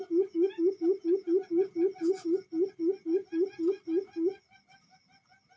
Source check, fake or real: real